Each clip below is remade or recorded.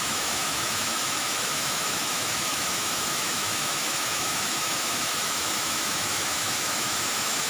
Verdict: remade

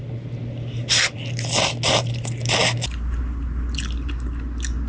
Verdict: recorded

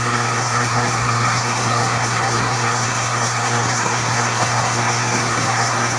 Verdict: remade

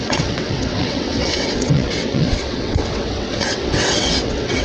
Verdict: remade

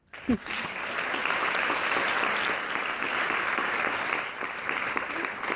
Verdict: recorded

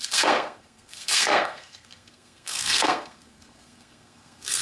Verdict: remade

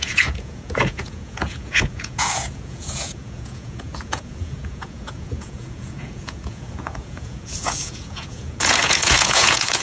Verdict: remade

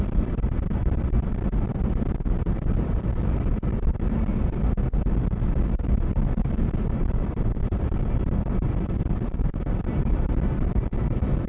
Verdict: recorded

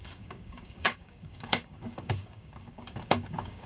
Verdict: remade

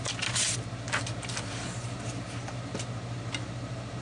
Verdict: recorded